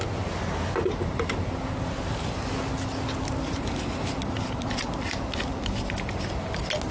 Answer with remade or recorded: recorded